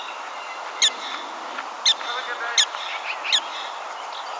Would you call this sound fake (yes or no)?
no